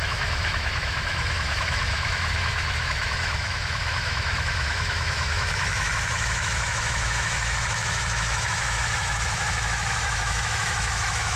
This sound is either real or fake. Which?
fake